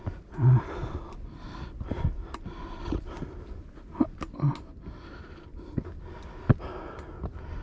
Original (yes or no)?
yes